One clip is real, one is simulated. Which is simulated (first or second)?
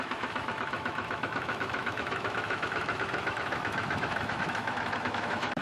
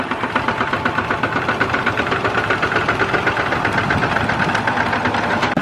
first